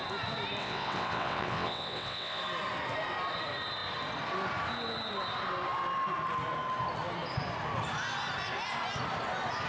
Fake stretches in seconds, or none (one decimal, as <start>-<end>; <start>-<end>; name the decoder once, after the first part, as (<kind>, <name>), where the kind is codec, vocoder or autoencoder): 0.6-2.4 (vocoder, WaveNeXt)